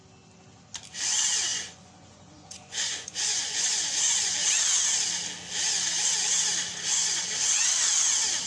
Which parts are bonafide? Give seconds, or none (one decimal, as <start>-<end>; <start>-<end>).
0.0-1.5; 4.3-6.7; 7.3-8.5